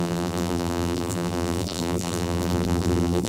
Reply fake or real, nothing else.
fake